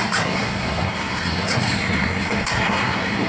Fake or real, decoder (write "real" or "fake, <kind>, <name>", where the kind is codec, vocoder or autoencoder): fake, codec, SNAC